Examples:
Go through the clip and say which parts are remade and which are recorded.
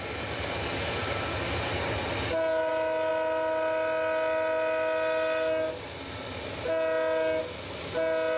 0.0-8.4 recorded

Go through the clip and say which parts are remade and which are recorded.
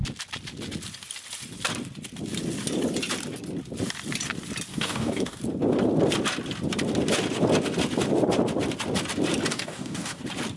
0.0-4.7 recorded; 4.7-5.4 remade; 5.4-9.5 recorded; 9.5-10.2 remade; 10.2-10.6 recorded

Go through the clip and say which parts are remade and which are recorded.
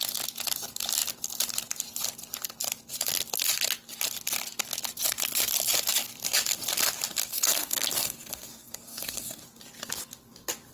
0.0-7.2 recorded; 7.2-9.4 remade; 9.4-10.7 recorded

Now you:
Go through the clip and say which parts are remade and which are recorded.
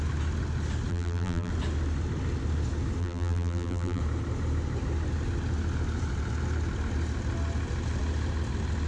0.0-0.9 recorded; 0.9-1.5 remade; 1.5-3.0 recorded; 3.0-4.0 remade; 4.0-8.9 recorded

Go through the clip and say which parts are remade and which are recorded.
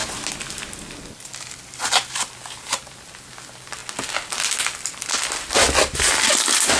0.0-0.5 recorded; 0.5-3.8 remade; 3.8-6.3 recorded; 6.3-6.8 remade